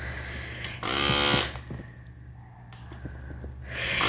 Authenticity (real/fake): real